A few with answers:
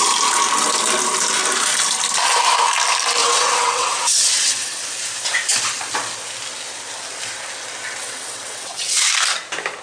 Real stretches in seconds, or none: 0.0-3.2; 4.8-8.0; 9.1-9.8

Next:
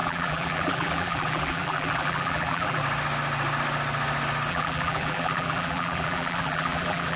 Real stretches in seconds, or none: 2.8-4.5

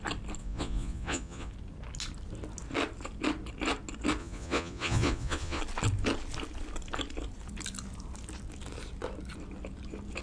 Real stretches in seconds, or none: 0.0-0.4; 1.5-4.2; 5.6-10.2

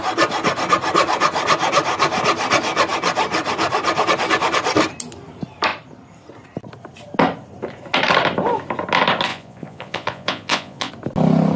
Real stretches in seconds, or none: 0.0-9.3; 10.9-11.6